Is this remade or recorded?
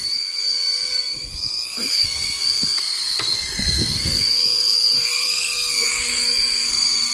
remade